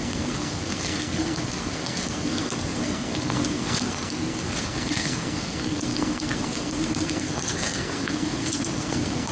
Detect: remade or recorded remade